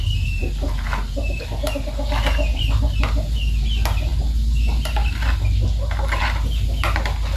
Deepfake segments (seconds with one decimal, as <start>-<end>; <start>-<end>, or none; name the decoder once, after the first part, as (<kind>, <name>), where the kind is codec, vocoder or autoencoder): 2.5-3.0 (vocoder, BigVGAN v2)